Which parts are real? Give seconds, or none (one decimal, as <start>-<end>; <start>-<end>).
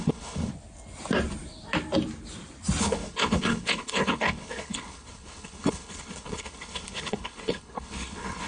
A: 0.5-2.8